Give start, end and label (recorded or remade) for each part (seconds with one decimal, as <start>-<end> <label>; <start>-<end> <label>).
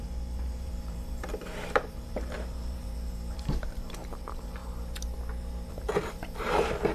0.0-4.6 remade; 4.6-5.7 recorded; 5.7-6.9 remade